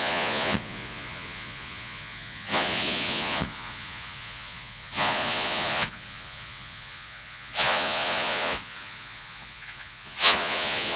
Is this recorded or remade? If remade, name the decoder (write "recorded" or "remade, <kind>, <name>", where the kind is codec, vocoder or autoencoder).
remade, vocoder, Vocos